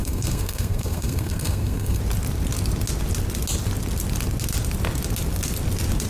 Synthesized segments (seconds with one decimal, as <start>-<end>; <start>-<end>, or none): 0.0-2.0